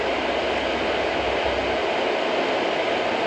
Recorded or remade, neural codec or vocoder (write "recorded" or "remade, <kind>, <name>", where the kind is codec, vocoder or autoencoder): recorded